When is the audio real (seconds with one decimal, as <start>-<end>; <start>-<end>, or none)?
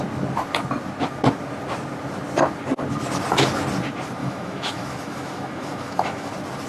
0.0-4.2; 6.3-6.7